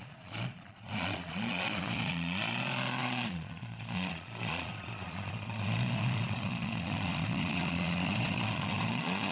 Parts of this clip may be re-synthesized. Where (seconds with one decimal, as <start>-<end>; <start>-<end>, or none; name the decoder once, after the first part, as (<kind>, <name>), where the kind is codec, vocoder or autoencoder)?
0.0-9.3 (vocoder, Vocos)